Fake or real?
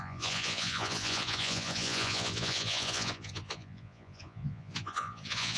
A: fake